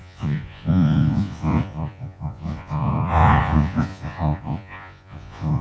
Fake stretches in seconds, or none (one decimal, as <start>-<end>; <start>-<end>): 0.0-5.6